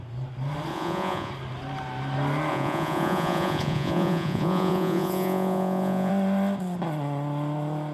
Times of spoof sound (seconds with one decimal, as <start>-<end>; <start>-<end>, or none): 0.7-1.3; 2.5-6.1